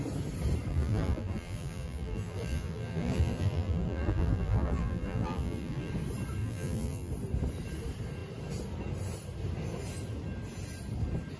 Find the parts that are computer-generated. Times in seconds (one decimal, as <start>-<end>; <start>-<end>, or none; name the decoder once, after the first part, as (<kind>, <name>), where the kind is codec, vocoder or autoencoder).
0.7-5.9 (vocoder, BigVGAN v2); 6.4-7.1